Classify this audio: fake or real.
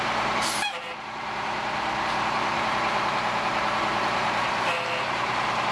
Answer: fake